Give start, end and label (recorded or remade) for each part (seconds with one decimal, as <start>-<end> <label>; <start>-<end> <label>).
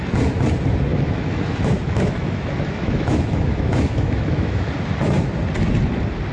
0.0-0.9 recorded; 0.9-4.7 remade; 4.7-6.3 recorded